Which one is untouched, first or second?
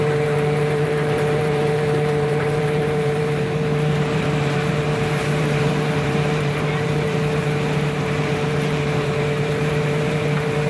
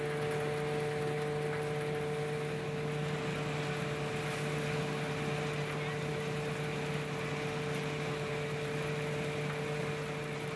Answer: second